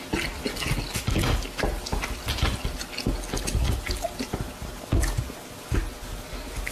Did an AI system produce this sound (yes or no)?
no